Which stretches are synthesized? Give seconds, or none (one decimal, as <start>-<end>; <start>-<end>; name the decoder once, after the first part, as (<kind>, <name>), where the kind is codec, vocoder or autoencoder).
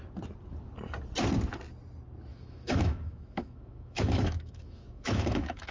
2.3-5.7 (autoencoder, DAC-VAE)